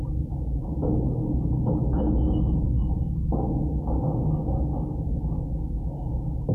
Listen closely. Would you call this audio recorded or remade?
recorded